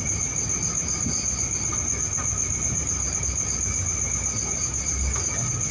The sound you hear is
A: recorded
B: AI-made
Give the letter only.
A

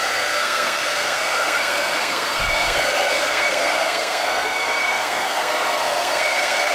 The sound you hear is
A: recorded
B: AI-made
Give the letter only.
B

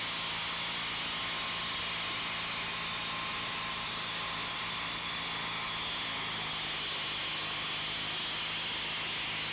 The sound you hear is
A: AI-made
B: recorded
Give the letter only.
B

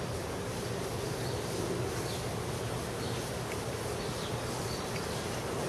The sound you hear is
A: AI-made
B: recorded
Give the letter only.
B